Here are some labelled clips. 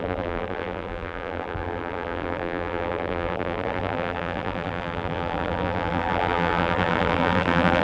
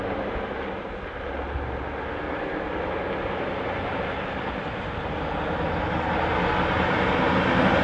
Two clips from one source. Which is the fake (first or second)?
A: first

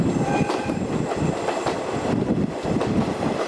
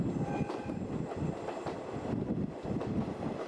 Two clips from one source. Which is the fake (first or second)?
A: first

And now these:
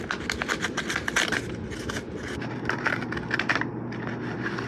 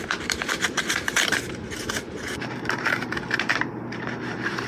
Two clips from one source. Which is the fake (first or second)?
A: second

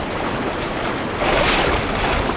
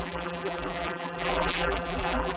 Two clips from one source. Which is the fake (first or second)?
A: second